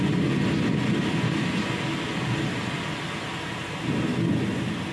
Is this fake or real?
real